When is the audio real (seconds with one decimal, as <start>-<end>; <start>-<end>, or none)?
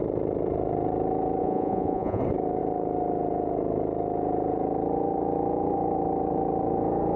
0.0-1.4; 2.2-7.2